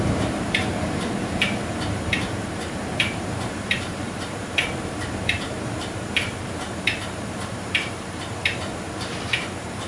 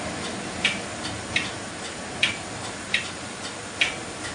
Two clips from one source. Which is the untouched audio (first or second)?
second